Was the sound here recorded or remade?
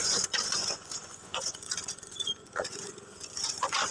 remade